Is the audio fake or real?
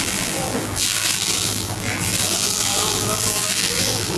fake